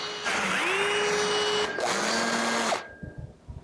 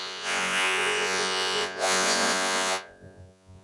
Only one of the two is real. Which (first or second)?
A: first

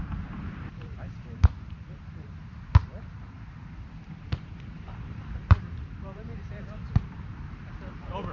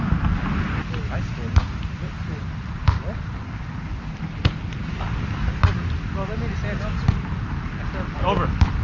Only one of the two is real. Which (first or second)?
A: second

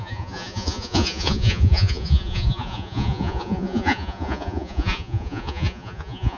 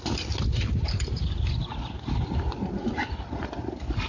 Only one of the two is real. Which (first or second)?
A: second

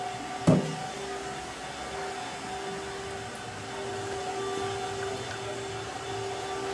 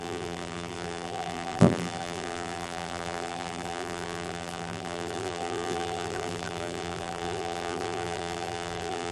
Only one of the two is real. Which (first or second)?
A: first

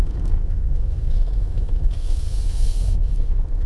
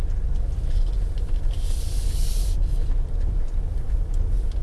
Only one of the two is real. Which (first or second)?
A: second